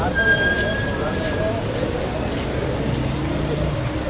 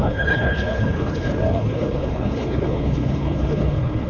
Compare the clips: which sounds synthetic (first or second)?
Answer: second